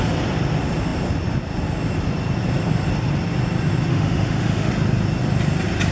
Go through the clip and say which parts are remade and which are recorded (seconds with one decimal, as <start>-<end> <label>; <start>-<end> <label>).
0.0-3.9 recorded; 3.9-4.7 remade; 4.7-5.9 recorded